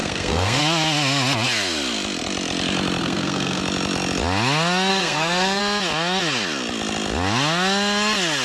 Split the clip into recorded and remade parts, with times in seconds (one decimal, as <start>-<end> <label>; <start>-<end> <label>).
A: 0.0-0.6 remade; 0.6-3.0 recorded; 3.0-3.6 remade; 3.6-4.9 recorded; 4.9-5.6 remade; 5.6-8.4 recorded